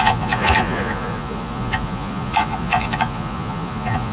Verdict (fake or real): fake